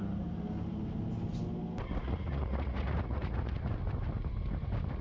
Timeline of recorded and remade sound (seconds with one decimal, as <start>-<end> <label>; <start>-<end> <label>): 0.0-2.0 recorded; 2.0-3.7 remade; 3.7-5.0 recorded

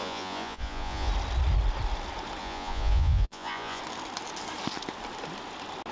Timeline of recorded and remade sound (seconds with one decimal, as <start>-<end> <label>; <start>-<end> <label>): 0.0-1.1 remade; 1.1-2.4 recorded; 2.4-3.8 remade; 3.8-5.9 recorded

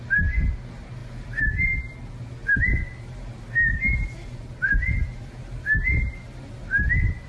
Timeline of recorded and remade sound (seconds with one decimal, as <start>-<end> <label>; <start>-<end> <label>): 0.0-7.3 recorded

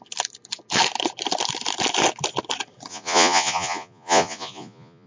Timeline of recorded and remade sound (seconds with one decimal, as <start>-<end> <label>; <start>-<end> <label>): 0.0-2.9 recorded; 2.9-5.1 remade

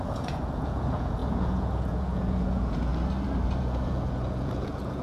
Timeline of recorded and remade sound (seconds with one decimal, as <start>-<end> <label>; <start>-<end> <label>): 0.0-2.9 remade; 2.9-3.6 recorded; 3.6-5.0 remade

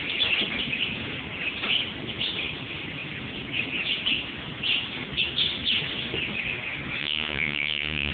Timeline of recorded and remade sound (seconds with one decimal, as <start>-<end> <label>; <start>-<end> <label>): 0.0-7.0 recorded; 7.0-8.1 remade

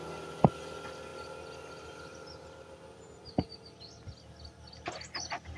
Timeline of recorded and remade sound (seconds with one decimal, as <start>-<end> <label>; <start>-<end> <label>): 0.0-5.6 recorded